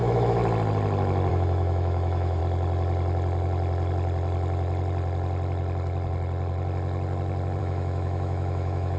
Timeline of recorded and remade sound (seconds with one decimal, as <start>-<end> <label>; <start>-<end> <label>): 0.0-0.4 remade; 0.4-1.3 recorded; 1.3-2.4 remade; 2.4-7.6 recorded; 7.6-9.0 remade

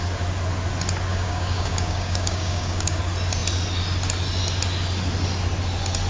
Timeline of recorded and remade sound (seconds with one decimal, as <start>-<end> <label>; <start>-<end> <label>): 0.0-1.1 recorded; 1.1-3.0 remade; 3.0-6.1 recorded

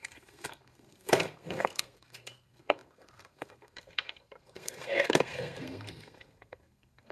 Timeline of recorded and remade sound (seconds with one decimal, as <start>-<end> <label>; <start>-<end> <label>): 0.0-7.1 remade

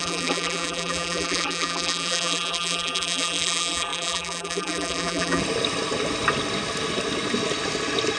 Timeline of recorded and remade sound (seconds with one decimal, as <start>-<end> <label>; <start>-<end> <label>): 0.0-5.4 remade; 5.4-8.2 recorded

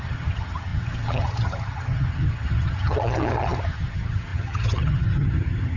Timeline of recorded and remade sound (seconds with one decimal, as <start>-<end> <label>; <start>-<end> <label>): 0.0-5.8 remade

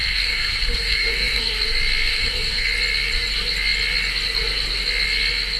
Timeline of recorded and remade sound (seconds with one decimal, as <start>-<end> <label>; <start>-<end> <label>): 0.0-1.4 remade; 1.4-2.1 recorded; 2.1-2.7 remade; 2.7-5.6 recorded

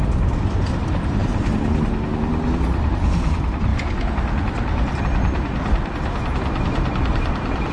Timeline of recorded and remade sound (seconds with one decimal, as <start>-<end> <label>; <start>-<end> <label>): 0.0-7.7 recorded

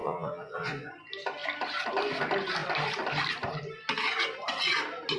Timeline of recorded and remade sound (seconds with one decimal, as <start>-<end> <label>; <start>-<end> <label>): 0.0-0.9 remade; 0.9-5.2 recorded